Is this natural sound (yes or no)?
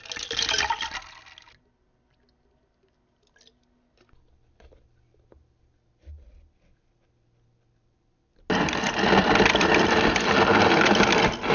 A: yes